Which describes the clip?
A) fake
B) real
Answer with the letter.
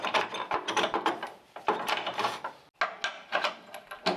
B